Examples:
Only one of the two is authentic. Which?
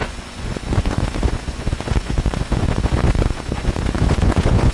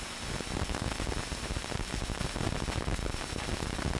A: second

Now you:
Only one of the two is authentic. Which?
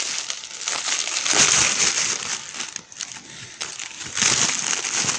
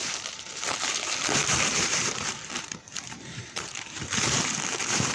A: first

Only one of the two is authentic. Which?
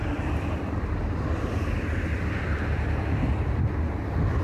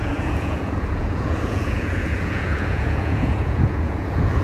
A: first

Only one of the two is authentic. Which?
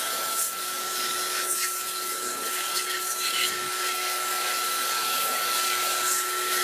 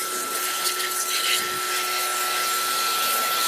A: second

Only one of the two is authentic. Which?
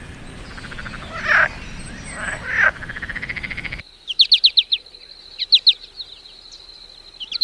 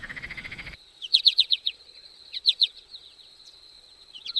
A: first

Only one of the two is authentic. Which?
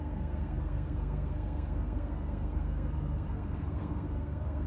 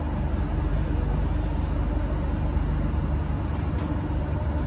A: second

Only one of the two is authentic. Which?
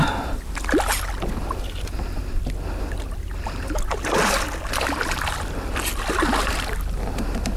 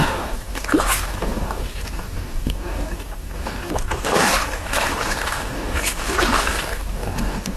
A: first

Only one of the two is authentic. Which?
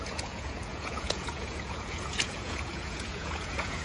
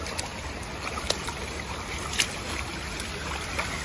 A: second